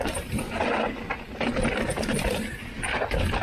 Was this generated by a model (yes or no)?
no